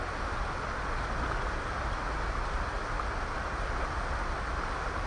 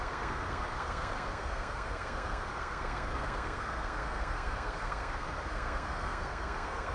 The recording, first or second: first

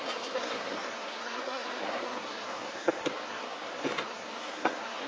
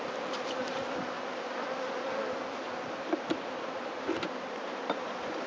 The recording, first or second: second